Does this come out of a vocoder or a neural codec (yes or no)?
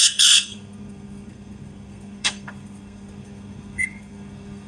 yes